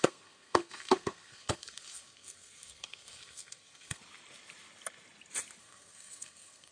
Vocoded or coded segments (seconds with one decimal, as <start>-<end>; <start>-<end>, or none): 0.0-4.0; 5.6-6.7

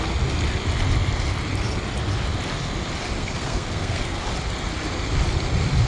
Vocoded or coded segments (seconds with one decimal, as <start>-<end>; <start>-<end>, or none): 3.2-4.2